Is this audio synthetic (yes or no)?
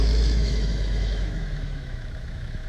yes